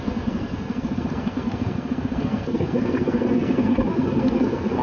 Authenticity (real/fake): fake